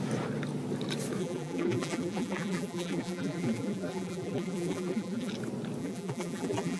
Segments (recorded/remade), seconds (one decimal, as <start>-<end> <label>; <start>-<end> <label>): 0.0-1.2 recorded; 1.2-5.3 remade; 5.3-5.8 recorded; 5.8-6.8 remade